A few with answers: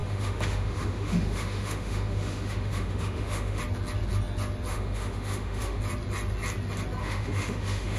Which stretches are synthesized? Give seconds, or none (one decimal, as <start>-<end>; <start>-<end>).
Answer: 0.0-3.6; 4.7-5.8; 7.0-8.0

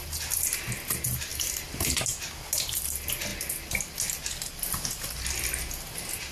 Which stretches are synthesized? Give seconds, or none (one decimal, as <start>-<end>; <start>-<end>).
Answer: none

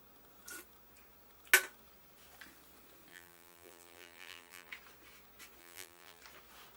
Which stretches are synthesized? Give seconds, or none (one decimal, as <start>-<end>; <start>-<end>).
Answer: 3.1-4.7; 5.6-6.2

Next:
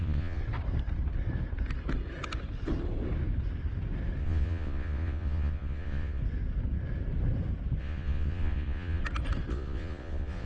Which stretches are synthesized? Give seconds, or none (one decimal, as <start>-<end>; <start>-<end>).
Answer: 0.0-0.4; 4.2-6.2; 7.8-9.0; 9.5-10.5

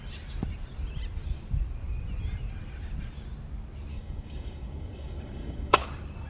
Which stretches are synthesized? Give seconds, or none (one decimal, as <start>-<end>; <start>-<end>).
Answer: 3.9-5.8

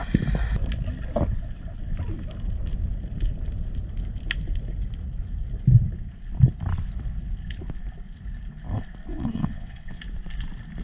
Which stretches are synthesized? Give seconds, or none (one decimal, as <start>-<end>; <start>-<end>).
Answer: 9.1-10.0